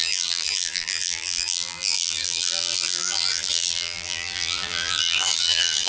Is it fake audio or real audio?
fake